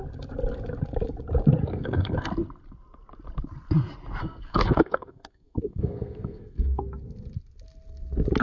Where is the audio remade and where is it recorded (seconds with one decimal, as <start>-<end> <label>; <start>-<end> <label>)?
0.0-1.7 recorded; 1.7-2.3 remade; 2.3-4.2 recorded; 4.2-6.8 remade; 6.8-8.4 recorded